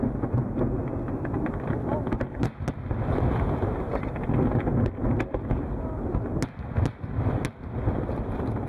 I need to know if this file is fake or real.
real